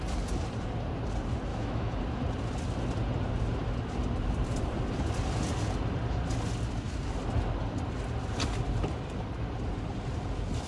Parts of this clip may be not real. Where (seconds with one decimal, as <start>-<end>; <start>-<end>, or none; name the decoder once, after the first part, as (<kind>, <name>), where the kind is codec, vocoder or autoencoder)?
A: 1.5-2.0 (autoencoder, DAC-VAE)